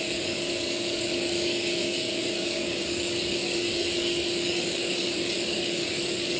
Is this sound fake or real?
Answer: fake